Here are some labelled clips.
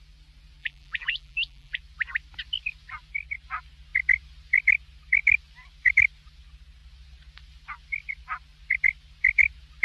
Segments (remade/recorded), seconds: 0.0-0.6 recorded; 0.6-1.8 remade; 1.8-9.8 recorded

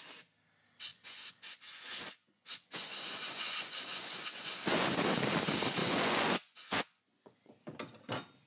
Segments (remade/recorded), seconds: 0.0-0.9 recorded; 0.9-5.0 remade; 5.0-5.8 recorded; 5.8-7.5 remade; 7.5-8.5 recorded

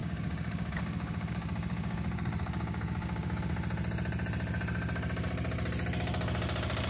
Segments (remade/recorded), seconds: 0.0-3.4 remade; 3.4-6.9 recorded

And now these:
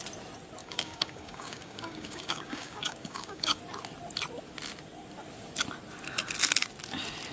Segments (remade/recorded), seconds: 0.0-0.6 recorded; 0.6-3.6 remade; 3.6-7.3 recorded